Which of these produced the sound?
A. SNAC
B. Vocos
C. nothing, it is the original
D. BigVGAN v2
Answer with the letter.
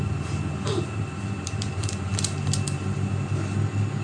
C